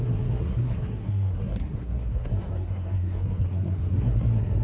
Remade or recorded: remade